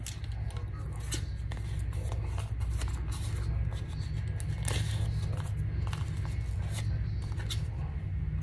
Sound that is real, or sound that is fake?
real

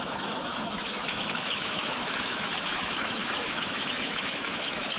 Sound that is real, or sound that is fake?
fake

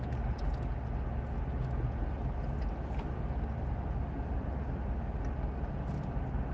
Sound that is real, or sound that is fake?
real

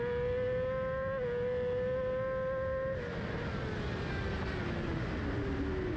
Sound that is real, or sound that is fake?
real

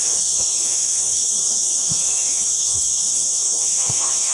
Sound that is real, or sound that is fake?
fake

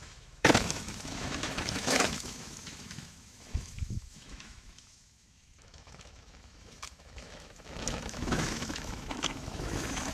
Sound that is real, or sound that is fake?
fake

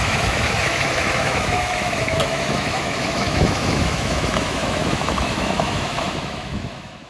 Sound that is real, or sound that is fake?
fake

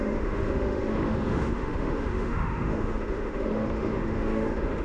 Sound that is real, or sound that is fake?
fake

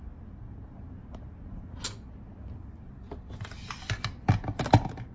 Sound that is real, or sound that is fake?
real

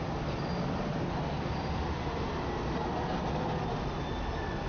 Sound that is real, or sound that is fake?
real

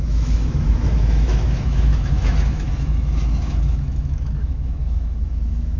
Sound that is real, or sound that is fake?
fake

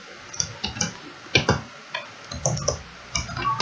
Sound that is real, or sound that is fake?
real